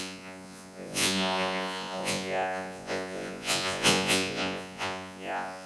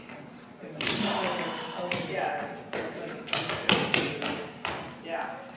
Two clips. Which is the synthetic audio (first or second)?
first